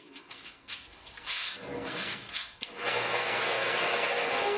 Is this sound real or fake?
fake